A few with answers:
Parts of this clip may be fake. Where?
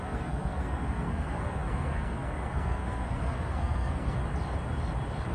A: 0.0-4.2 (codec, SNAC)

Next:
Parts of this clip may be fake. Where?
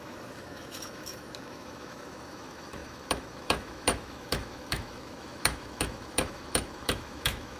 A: 0.0-7.6 (autoencoder, DAC-VAE)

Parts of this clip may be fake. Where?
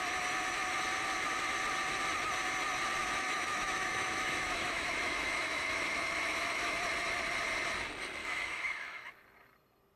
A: 3.0-6.8 (autoencoder, DAC-VAE); 8.2-9.1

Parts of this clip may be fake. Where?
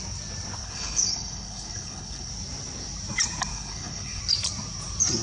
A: 0.6-2.3 (codec, HILCodec); 3.5-4.2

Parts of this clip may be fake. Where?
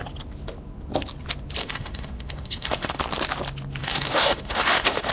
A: 1.6-3.0 (autoencoder, DAC-VAE); 3.8-5.1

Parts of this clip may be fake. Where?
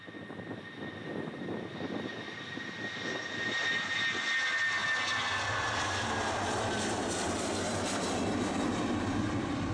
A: none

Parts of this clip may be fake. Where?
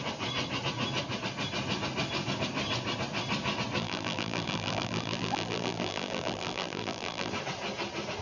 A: 3.8-7.3 (vocoder, BigVGAN v2)